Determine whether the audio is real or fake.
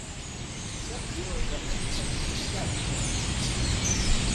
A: real